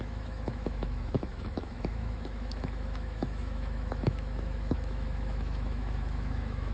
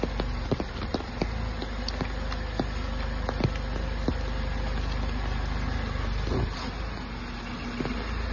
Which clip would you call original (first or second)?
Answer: second